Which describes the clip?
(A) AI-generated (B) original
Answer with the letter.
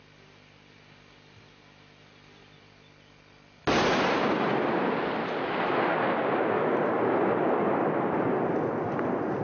B